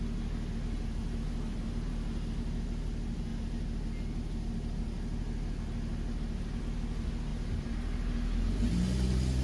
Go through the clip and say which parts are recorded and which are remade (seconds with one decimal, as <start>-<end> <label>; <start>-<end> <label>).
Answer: 0.0-9.4 recorded